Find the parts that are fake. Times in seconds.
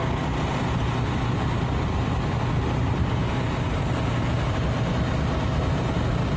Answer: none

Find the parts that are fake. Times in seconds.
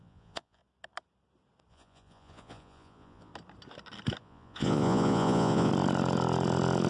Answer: 0.0-0.6 (vocoder, Vocos); 1.7-3.3; 4.2-5.7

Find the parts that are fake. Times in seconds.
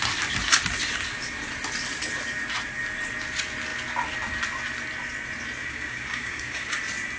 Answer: 5.6-6.8 (codec, DAC)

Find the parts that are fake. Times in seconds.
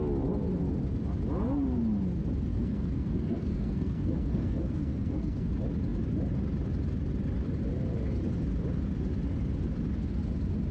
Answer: 2.5-5.5 (codec, SNAC)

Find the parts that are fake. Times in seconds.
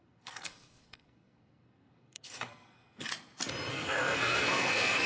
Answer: 0.0-3.1 (codec, SNAC); 3.7-5.1